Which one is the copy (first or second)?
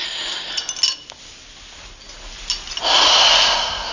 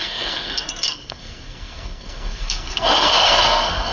second